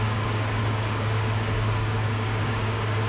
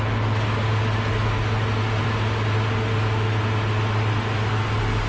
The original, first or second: second